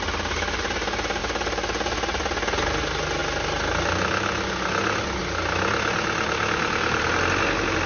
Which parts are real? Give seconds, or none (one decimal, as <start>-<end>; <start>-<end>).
0.0-7.9